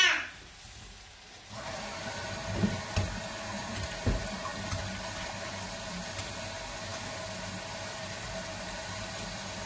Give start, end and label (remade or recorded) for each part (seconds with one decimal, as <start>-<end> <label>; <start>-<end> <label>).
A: 0.0-9.7 recorded